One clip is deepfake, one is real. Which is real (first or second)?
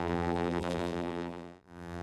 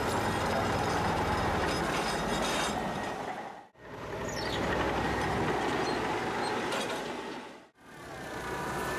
second